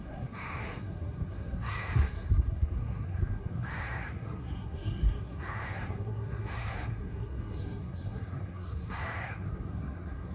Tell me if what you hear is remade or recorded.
remade